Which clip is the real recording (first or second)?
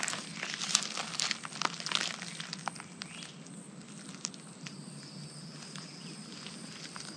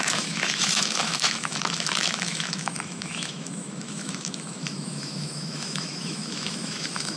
first